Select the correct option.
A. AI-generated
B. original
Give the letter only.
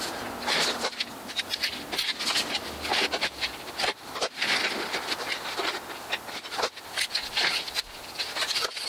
B